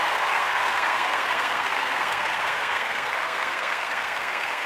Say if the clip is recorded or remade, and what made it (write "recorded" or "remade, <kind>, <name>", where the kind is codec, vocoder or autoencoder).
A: remade, codec, SNAC